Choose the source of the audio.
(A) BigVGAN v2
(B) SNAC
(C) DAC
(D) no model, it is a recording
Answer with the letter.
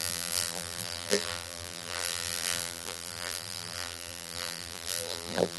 A